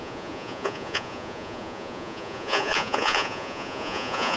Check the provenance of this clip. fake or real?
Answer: fake